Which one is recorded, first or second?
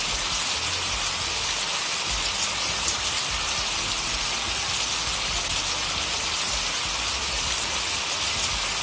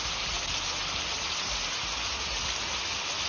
second